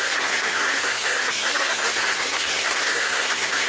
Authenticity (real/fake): fake